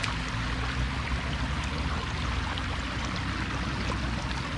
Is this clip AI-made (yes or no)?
no